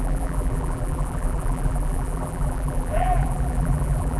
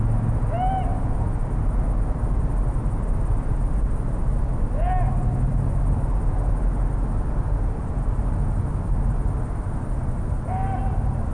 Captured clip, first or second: second